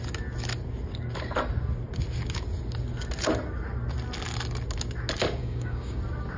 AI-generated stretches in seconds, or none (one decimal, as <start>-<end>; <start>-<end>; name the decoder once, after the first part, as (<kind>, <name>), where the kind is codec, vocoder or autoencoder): 5.4-6.0 (codec, DAC)